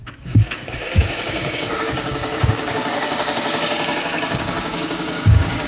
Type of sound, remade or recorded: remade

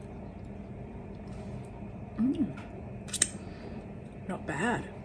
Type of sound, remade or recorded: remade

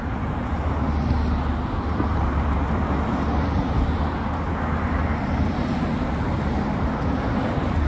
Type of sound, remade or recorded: recorded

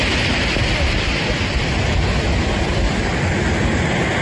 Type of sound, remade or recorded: recorded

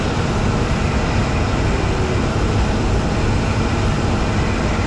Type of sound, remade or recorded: recorded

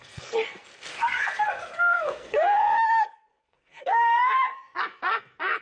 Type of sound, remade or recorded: remade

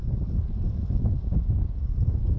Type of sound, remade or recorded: recorded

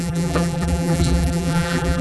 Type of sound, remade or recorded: remade